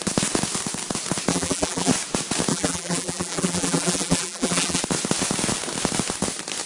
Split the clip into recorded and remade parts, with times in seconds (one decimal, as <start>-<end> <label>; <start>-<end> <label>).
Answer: 0.0-1.3 recorded; 1.3-1.9 remade; 1.9-2.5 recorded; 2.5-4.8 remade; 4.8-6.7 recorded